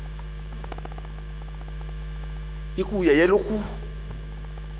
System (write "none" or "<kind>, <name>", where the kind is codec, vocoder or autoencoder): autoencoder, DAC-VAE